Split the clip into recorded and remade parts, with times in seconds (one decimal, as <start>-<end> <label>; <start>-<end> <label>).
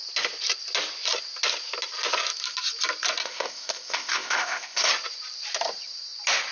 0.0-3.2 recorded; 3.2-4.9 remade; 4.9-6.5 recorded